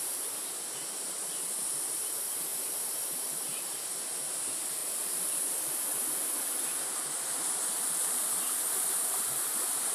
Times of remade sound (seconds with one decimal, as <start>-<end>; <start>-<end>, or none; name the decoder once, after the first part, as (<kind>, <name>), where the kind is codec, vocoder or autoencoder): 0.0-4.8 (vocoder, BigVGAN v2); 8.4-9.9